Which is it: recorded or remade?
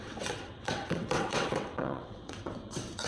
remade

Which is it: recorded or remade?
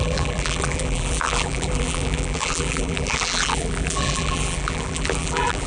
remade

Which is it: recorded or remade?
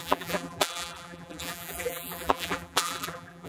remade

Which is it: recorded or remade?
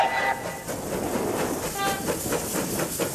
recorded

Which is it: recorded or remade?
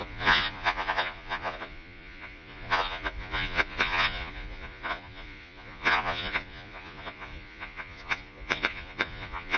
remade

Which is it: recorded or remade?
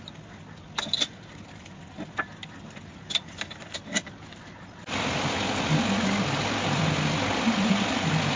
recorded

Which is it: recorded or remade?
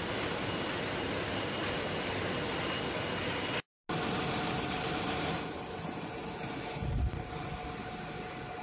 recorded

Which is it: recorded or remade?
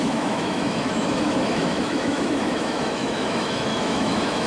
remade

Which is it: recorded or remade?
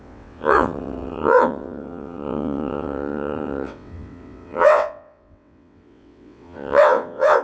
remade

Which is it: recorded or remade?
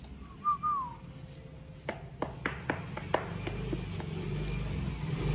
recorded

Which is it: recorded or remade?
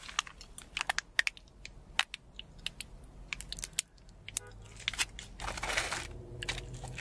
recorded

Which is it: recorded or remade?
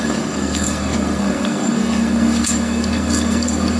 remade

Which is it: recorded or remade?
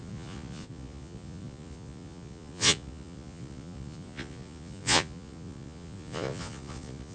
remade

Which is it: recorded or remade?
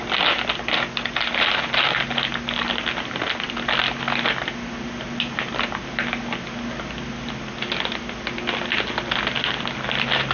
recorded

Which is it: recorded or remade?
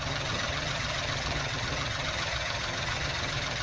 remade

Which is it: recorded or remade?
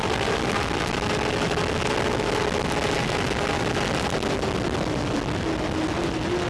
recorded